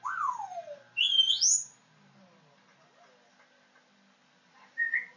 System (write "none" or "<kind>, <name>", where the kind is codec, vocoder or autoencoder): none